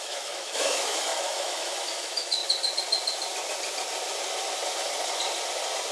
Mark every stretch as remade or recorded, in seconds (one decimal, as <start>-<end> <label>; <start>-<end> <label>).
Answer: 0.0-2.4 remade; 2.4-5.9 recorded